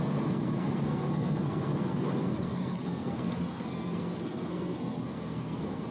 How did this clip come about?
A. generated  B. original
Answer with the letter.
A